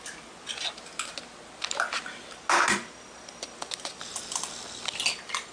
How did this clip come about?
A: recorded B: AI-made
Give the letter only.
A